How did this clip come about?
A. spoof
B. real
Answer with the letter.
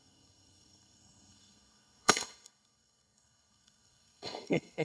A